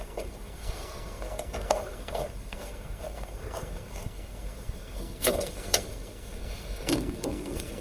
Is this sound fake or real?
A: fake